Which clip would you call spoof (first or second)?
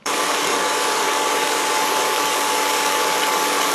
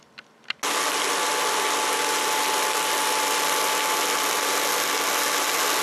first